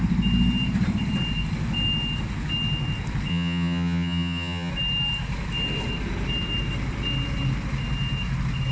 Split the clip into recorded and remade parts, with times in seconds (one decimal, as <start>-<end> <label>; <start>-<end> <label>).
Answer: 0.0-3.3 recorded; 3.3-4.7 remade; 4.7-8.7 recorded